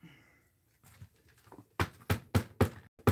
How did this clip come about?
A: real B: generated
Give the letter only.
A